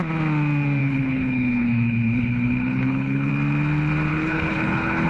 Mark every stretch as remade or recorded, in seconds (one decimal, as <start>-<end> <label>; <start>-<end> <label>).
0.0-0.8 recorded; 0.8-3.3 remade; 3.3-4.1 recorded; 4.1-5.1 remade